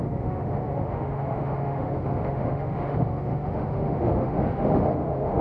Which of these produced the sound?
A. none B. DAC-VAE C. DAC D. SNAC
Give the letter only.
B